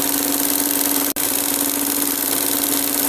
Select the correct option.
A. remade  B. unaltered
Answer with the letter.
B